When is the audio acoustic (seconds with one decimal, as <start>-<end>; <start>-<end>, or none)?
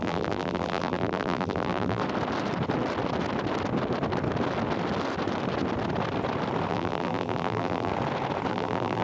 2.0-6.7; 7.9-8.5